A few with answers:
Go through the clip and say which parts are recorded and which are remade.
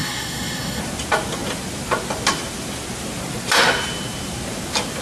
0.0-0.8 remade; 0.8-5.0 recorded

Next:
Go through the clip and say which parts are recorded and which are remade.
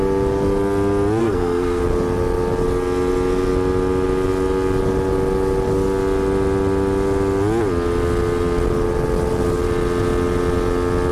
0.0-1.2 recorded; 1.2-1.8 remade; 1.8-11.1 recorded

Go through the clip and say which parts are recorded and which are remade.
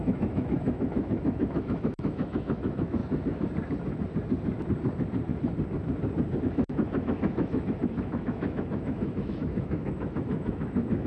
0.0-3.0 remade; 3.0-6.4 recorded; 6.4-11.1 remade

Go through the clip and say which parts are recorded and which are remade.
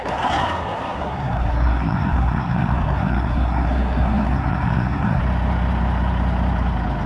0.0-5.2 remade; 5.2-7.1 recorded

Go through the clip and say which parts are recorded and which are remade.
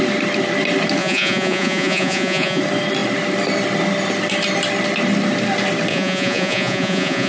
0.0-1.0 recorded; 1.0-2.6 remade; 2.6-5.9 recorded; 5.9-7.3 remade